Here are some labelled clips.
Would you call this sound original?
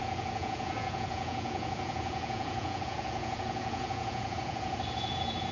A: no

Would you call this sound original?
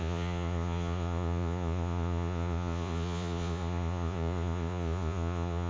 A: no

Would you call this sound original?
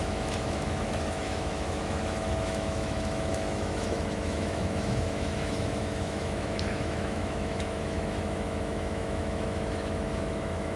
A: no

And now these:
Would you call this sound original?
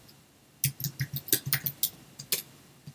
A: yes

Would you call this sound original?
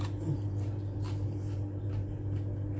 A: yes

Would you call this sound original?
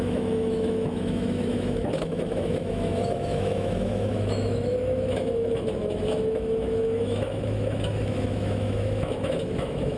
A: no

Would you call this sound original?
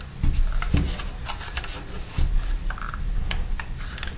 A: yes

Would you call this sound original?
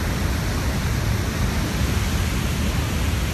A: yes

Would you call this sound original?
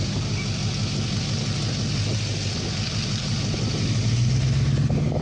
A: yes